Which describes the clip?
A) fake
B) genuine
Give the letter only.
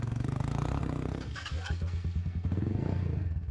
A